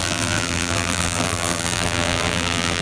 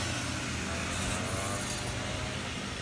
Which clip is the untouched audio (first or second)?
second